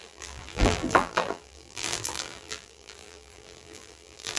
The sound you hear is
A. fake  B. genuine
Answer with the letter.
A